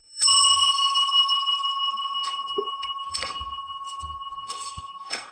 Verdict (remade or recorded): remade